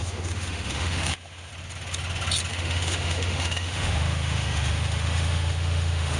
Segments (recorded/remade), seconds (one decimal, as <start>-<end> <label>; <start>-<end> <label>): 0.0-1.5 remade; 1.5-2.5 recorded; 2.5-6.2 remade